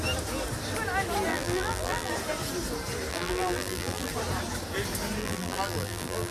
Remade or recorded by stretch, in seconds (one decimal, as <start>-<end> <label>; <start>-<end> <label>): 0.0-1.3 recorded; 1.3-2.1 remade; 2.1-3.1 recorded; 3.1-4.1 remade; 4.1-5.2 recorded; 5.2-6.3 remade